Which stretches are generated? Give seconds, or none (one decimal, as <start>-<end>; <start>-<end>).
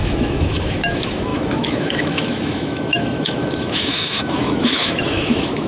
0.0-5.7